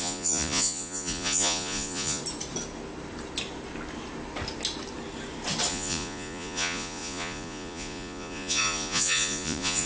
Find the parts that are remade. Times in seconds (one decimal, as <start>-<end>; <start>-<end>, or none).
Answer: 0.0-2.2; 5.7-9.9